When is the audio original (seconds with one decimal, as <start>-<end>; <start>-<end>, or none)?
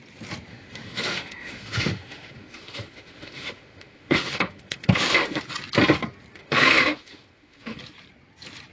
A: 0.0-0.5; 5.4-6.4; 7.8-8.7